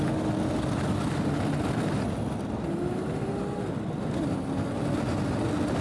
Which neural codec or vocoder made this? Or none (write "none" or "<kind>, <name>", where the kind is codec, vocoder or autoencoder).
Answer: none